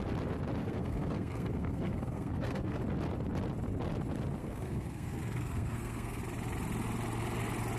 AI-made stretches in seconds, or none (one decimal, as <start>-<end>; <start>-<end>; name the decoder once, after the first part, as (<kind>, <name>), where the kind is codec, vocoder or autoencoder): 0.6-2.8 (codec, SNAC); 4.4-6.2